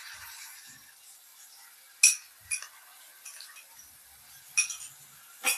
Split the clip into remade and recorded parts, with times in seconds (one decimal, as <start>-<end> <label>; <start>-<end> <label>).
0.0-5.6 recorded